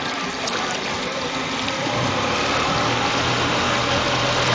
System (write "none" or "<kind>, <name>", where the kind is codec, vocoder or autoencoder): none